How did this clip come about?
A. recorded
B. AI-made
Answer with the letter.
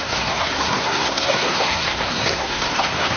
B